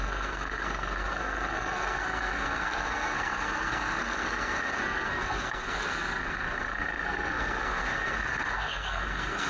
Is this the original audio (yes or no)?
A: no